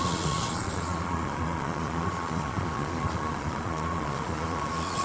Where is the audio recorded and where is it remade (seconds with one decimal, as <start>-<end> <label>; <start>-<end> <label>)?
0.0-5.0 remade

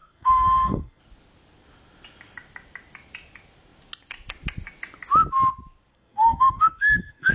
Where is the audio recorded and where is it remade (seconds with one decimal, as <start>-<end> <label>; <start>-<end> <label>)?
0.0-1.0 remade; 1.0-5.9 recorded; 5.9-7.3 remade